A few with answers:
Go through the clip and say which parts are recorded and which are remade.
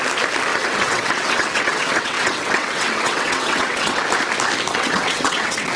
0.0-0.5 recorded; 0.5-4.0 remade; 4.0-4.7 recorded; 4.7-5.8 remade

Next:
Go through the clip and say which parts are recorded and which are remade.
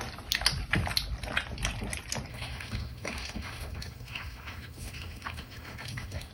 0.0-2.3 recorded; 2.3-6.3 remade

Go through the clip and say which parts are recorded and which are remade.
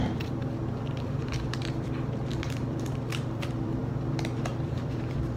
0.0-3.8 remade; 3.8-4.6 recorded; 4.6-5.4 remade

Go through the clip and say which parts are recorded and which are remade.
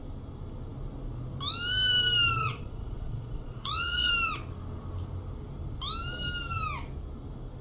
0.0-2.4 recorded; 2.4-4.1 remade; 4.1-7.6 recorded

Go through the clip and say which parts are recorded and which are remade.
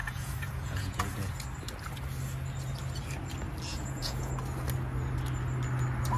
0.0-1.3 remade; 1.3-3.7 recorded; 3.7-4.3 remade; 4.3-6.2 recorded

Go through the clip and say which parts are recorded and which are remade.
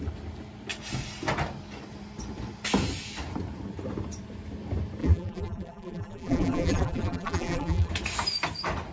0.0-5.0 recorded; 5.0-7.9 remade; 7.9-8.9 recorded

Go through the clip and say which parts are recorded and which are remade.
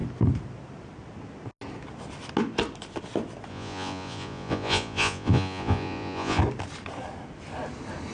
0.0-3.5 recorded; 3.5-6.4 remade; 6.4-8.1 recorded